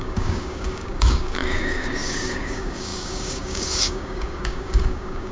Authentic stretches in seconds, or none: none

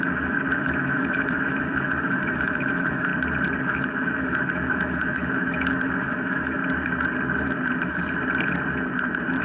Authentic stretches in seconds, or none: 3.1-3.6; 6.6-9.4

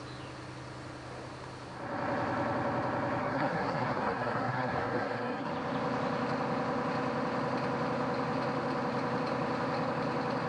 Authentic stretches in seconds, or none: 0.0-3.2; 5.5-10.5